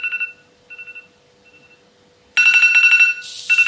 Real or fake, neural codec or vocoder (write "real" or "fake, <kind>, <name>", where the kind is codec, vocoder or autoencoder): real